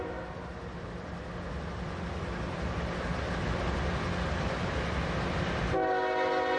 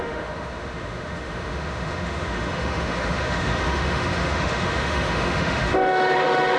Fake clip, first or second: second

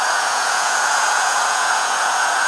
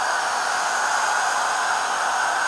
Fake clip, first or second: first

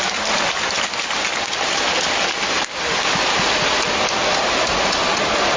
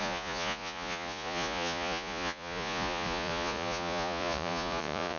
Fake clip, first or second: second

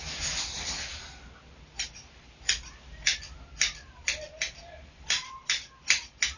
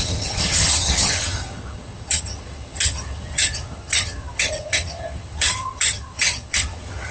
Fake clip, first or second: second